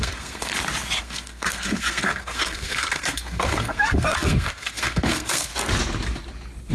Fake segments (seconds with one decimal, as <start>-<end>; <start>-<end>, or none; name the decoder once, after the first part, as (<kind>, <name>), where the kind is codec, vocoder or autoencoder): 0.0-0.5 (codec, SNAC); 1.0-5.5